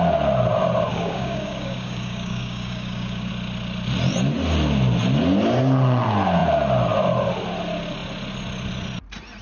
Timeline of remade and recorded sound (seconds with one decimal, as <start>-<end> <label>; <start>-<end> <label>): 0.0-0.9 recorded; 0.9-3.3 remade; 3.3-9.4 recorded